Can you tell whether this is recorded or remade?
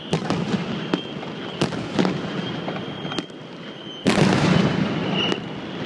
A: recorded